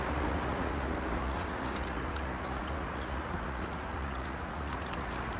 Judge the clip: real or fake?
fake